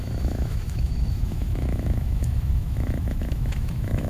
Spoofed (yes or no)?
yes